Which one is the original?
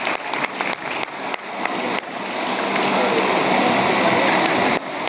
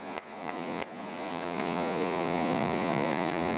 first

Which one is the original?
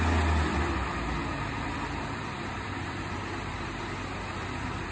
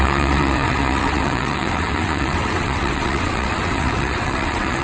first